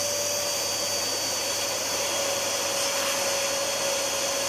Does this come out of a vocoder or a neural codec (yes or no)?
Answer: no